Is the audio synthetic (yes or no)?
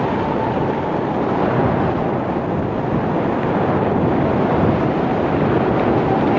no